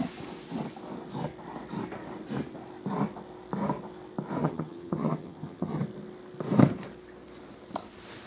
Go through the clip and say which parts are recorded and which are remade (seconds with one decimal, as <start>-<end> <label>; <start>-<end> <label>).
0.0-4.4 recorded; 4.4-5.8 remade; 5.8-8.3 recorded